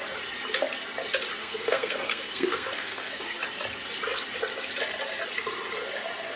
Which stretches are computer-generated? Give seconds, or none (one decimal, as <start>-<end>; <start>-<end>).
1.4-3.4